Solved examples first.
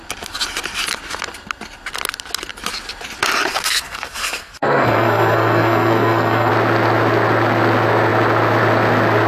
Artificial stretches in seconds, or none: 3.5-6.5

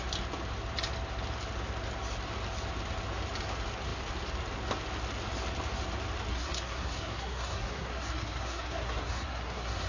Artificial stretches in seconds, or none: 6.3-9.9

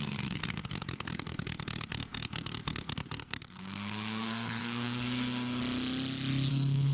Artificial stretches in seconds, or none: 0.0-5.6; 6.5-6.9